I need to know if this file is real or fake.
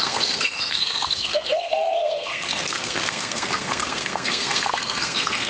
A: fake